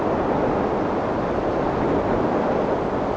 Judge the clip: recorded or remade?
recorded